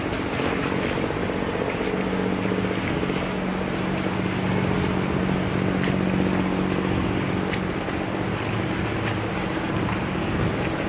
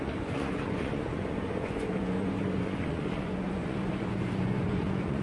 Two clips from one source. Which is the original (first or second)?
first